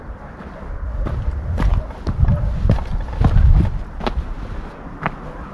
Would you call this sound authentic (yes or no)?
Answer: yes